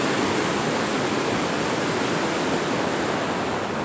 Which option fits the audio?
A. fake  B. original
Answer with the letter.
B